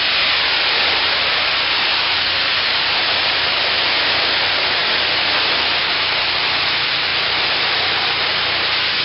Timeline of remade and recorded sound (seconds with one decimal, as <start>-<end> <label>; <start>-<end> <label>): 0.0-1.9 recorded; 1.9-3.7 remade; 3.7-7.1 recorded; 7.1-7.8 remade; 7.8-9.0 recorded